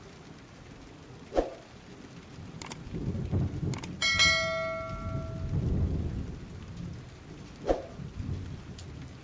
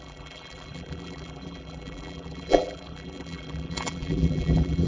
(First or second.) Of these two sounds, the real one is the first